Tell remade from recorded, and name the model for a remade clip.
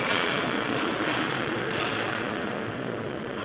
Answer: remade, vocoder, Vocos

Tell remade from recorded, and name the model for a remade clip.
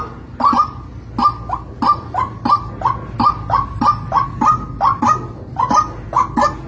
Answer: recorded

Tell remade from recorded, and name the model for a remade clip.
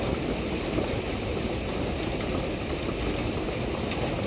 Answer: recorded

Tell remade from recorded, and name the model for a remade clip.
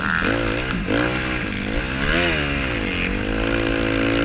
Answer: recorded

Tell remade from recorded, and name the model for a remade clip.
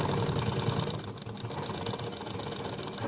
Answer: recorded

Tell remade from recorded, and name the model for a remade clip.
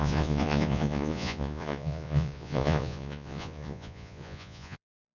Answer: remade, vocoder, Vocos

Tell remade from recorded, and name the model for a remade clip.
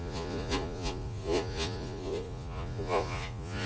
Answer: remade, vocoder, Vocos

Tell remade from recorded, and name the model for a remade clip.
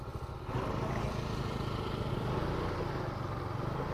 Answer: recorded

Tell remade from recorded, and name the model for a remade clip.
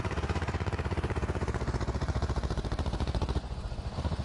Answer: remade, vocoder, Vocos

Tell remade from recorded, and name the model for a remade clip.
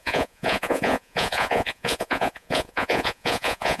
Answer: remade, vocoder, Vocos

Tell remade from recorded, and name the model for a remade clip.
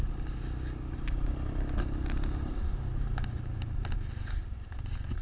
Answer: recorded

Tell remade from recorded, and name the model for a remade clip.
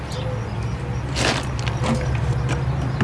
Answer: recorded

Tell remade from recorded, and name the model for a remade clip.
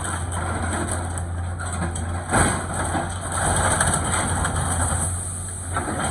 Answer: recorded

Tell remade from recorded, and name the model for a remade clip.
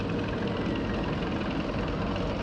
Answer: recorded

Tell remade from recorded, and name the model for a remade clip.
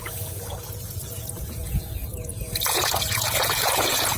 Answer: remade, vocoder, Vocos